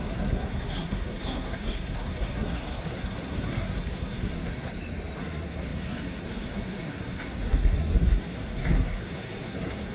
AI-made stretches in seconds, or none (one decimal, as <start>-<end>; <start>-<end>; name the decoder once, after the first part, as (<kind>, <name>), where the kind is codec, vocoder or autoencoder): 0.0-4.7 (codec, SNAC); 5.2-9.9